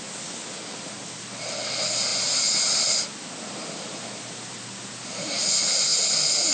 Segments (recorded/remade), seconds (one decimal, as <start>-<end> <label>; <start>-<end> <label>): 0.0-6.5 recorded